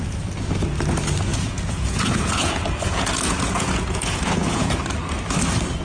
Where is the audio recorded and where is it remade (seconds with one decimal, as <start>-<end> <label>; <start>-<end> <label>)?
0.0-1.3 recorded; 1.3-4.8 remade; 4.8-5.8 recorded